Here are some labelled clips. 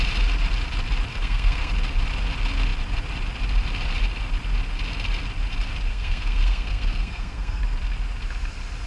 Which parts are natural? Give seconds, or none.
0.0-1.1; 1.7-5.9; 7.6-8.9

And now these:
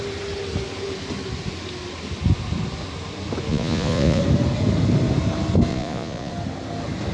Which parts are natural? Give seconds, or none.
0.0-3.5; 4.2-5.7; 6.3-7.1